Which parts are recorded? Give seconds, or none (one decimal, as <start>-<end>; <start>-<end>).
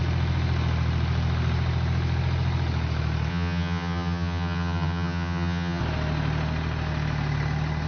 0.0-3.3; 5.8-7.9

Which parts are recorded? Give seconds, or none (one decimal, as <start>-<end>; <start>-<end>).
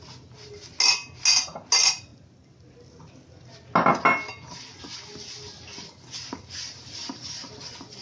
0.0-7.0; 7.6-8.0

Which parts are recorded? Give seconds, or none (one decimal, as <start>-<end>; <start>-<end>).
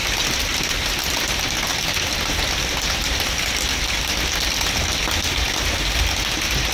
0.0-6.7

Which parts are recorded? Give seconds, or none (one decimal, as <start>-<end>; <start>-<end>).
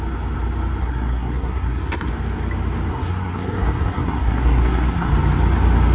0.0-0.8; 2.1-2.9; 5.1-5.9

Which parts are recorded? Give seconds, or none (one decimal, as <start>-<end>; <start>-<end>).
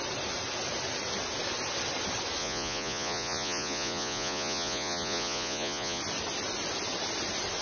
0.0-2.4; 6.0-7.6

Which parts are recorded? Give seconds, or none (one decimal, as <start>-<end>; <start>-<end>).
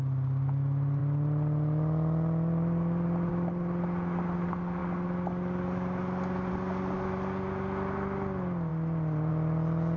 0.0-10.0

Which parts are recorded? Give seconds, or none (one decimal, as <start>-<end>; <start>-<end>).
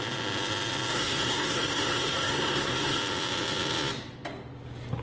0.0-0.9; 3.0-5.0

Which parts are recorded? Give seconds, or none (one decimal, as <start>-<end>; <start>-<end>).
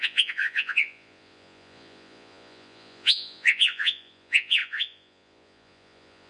none